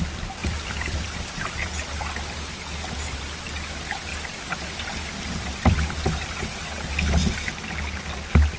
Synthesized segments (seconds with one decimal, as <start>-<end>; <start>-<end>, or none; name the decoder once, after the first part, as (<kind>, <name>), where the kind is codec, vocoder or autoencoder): 0.4-2.1 (vocoder, BigVGAN v2)